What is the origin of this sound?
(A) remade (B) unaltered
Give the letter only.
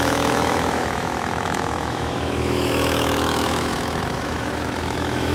A